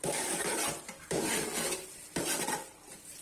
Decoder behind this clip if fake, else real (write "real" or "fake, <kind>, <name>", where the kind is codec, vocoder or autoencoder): real